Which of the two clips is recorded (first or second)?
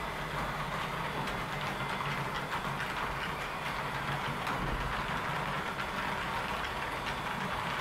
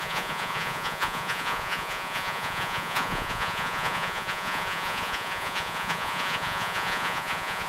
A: first